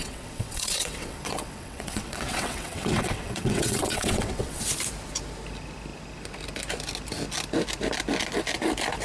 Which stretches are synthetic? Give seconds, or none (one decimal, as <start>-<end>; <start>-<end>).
0.0-4.6

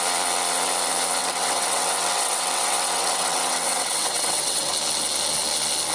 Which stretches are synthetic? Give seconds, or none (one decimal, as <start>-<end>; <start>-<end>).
1.2-4.7

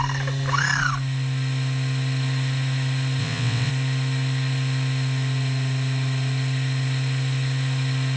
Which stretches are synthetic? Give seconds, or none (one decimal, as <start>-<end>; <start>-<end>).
3.2-3.7

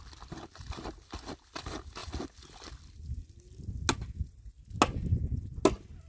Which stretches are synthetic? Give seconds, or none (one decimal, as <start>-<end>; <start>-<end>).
none

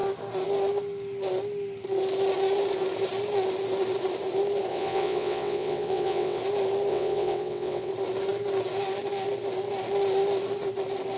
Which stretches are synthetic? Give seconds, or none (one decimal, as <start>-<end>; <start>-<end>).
4.7-6.4; 6.9-7.9

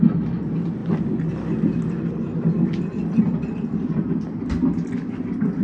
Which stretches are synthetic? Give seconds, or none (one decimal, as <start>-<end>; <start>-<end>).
none